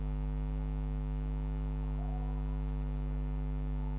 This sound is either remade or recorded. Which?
recorded